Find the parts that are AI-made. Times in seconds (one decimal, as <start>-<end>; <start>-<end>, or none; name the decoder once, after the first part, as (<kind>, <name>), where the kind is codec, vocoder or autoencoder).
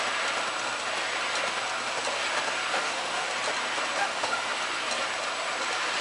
2.7-3.3 (autoencoder, DAC-VAE); 4.0-4.6